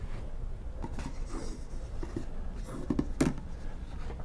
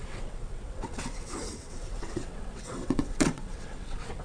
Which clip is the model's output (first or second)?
second